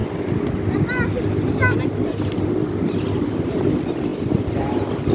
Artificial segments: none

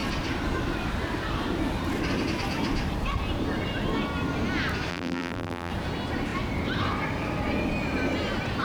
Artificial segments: 4.9-5.7 (vocoder, BigVGAN v2)

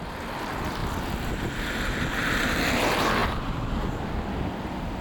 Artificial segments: none